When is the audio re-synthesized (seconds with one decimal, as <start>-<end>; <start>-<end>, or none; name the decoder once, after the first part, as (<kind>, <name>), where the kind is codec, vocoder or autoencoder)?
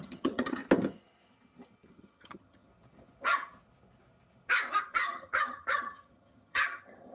0.0-0.6 (vocoder, HiFi-GAN); 1.9-2.7; 4.8-7.1